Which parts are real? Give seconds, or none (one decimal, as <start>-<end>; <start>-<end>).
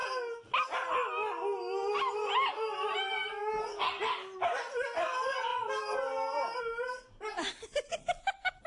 0.0-2.1